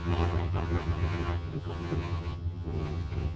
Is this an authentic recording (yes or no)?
no